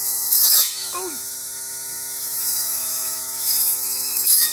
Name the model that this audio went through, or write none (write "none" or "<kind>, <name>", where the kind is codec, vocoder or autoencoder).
autoencoder, DAC-VAE